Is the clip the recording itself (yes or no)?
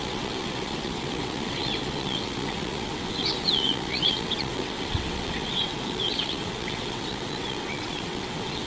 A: no